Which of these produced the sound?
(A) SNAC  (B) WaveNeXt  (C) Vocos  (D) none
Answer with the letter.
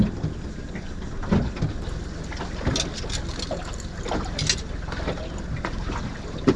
D